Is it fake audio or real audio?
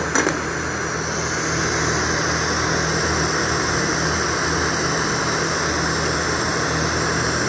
real